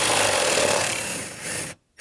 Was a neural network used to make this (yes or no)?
no